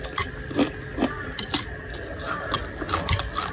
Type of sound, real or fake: real